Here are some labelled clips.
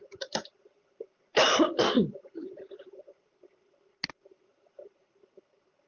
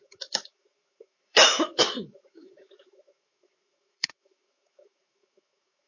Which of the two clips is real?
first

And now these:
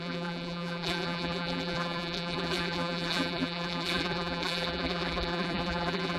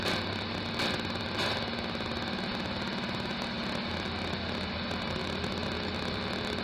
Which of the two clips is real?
second